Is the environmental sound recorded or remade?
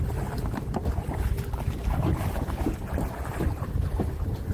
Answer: recorded